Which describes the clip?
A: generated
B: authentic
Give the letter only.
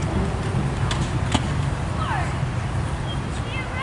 B